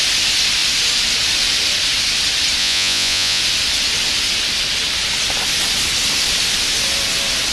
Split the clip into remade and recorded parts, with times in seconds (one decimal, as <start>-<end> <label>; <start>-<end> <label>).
0.0-2.6 recorded; 2.6-3.4 remade; 3.4-7.5 recorded